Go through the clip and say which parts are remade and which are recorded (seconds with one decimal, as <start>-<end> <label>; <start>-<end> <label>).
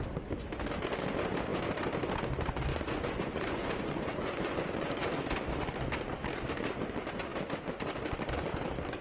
0.0-2.7 recorded; 2.7-5.2 remade; 5.2-9.0 recorded